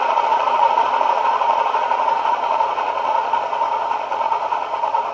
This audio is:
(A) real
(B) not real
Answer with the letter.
B